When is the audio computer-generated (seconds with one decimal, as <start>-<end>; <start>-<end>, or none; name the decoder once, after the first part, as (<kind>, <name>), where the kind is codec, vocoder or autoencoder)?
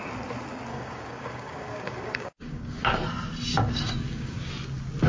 0.7-2.8 (codec, DAC); 3.5-4.5